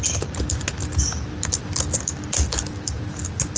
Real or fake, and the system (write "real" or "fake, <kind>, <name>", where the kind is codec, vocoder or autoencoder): real